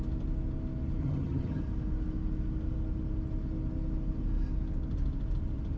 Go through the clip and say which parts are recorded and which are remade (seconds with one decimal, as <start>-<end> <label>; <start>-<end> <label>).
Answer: 0.0-1.0 recorded; 1.0-1.6 remade; 1.6-5.8 recorded